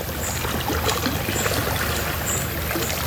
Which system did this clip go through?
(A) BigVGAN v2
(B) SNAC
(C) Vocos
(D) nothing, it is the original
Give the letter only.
D